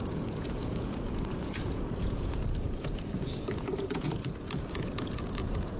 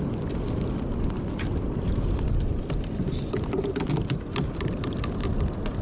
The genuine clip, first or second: second